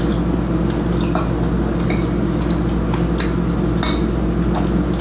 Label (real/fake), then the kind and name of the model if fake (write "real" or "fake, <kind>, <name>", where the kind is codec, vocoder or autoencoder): real